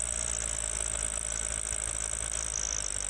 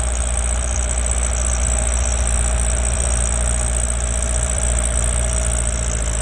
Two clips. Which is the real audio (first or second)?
first